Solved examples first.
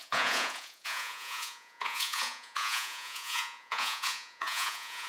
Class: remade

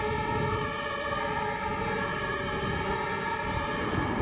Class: recorded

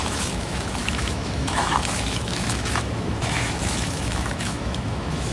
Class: remade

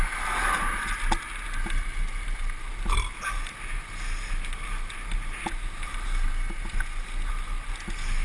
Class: recorded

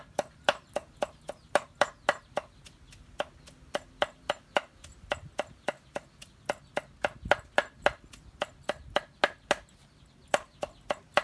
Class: recorded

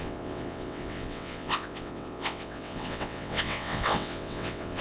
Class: remade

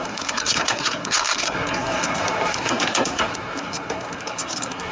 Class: remade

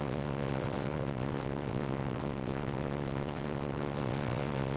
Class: remade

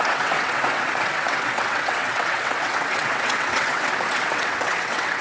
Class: remade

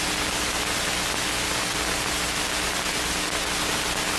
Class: recorded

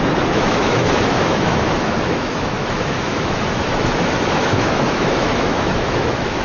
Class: remade